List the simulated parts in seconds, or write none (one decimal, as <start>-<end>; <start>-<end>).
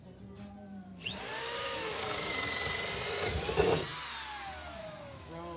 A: 1.3-2.3